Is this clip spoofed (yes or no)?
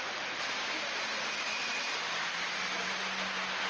no